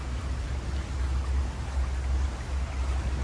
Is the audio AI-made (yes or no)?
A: no